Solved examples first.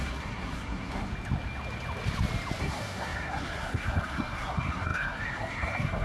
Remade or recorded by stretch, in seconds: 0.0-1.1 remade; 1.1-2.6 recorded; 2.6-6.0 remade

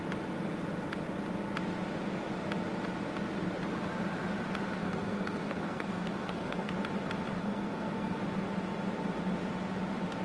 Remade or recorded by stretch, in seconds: 0.0-4.8 recorded; 4.8-6.7 remade; 6.7-7.4 recorded; 7.4-8.2 remade; 8.2-10.2 recorded

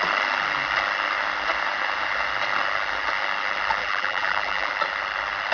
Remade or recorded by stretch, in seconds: 0.0-3.8 recorded; 3.8-4.7 remade; 4.7-5.5 recorded